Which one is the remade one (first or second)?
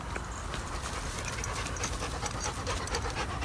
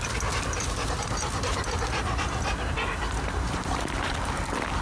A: first